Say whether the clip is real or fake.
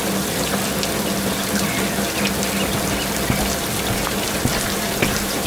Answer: real